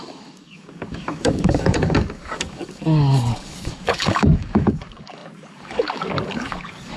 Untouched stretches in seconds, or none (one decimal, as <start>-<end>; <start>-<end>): none